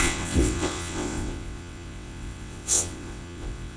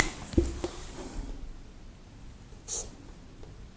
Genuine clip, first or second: second